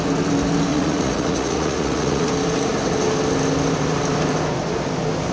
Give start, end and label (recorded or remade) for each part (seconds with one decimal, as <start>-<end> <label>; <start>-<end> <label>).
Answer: 0.0-0.7 recorded; 0.7-2.3 remade; 2.3-5.3 recorded